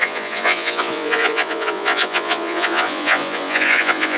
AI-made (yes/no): yes